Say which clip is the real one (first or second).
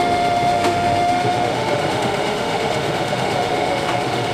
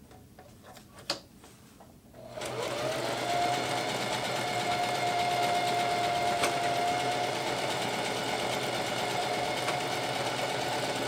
second